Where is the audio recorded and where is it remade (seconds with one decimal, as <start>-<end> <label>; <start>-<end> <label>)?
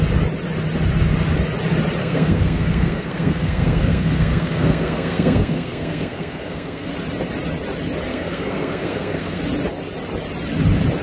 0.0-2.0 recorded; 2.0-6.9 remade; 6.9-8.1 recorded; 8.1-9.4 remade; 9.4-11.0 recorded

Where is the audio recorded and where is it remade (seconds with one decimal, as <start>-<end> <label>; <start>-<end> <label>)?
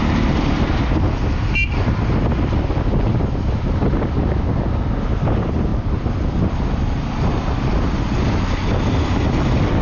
0.0-9.8 recorded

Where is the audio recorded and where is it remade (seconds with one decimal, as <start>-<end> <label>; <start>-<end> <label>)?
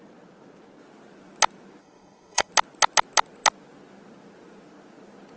0.0-1.8 recorded; 1.8-2.5 remade; 2.5-5.4 recorded